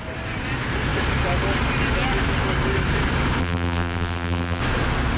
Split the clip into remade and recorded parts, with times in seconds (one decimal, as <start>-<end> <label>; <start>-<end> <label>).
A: 0.0-3.4 recorded; 3.4-4.6 remade; 4.6-5.2 recorded